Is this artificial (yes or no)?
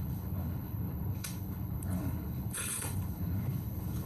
yes